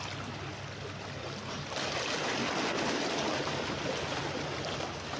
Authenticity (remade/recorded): recorded